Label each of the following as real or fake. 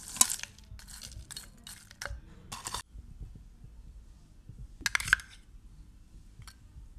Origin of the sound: real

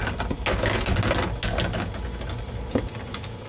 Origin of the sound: real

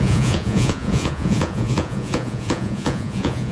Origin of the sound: fake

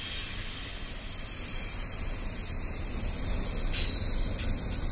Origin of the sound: real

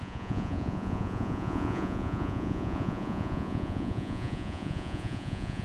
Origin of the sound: fake